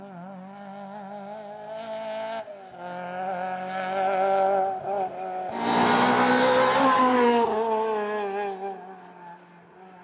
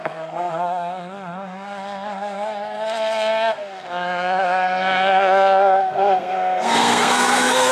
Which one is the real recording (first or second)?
first